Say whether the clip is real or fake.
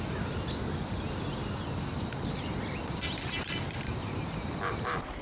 real